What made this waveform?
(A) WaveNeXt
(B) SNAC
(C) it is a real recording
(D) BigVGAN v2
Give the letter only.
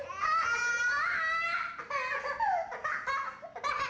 C